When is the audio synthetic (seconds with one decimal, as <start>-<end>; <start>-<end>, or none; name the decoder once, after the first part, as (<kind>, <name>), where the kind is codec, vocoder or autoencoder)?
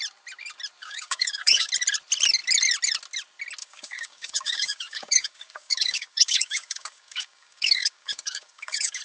0.8-1.7 (codec, DAC); 3.6-9.0